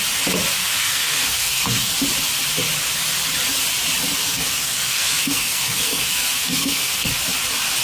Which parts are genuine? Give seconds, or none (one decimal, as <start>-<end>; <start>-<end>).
0.0-0.6; 1.9-4.2; 7.1-7.8